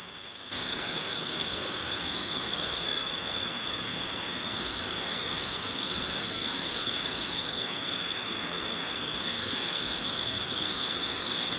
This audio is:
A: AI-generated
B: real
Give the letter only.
A